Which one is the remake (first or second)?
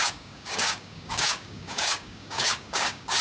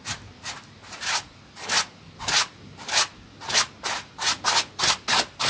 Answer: first